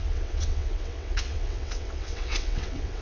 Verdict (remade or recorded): remade